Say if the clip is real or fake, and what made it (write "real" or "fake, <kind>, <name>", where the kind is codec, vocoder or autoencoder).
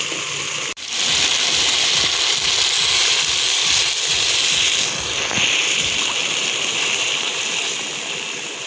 real